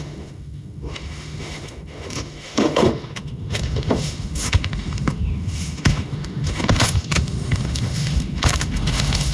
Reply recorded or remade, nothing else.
remade